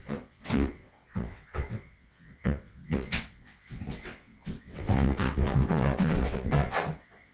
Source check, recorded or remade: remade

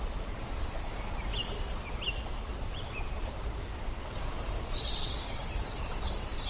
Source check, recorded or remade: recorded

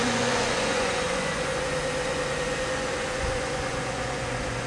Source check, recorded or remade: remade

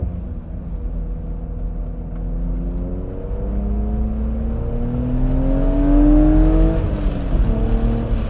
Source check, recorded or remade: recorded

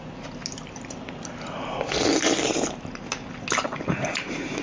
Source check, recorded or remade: recorded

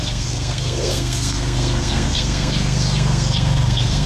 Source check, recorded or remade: remade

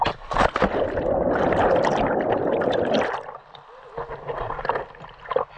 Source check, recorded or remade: recorded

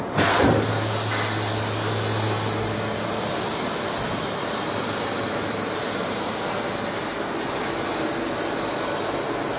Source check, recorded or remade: recorded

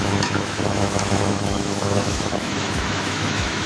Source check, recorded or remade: remade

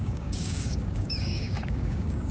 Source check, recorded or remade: remade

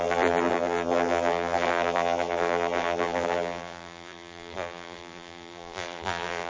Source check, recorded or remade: remade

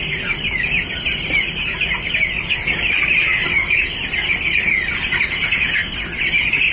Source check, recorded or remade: recorded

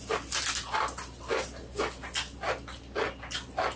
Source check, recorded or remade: recorded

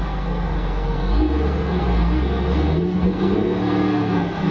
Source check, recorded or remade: remade